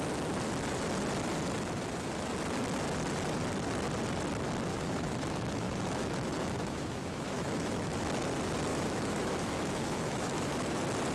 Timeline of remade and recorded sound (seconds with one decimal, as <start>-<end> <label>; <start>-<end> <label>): 0.0-4.7 recorded; 4.7-8.0 remade; 8.0-8.7 recorded; 8.7-10.5 remade; 10.5-11.1 recorded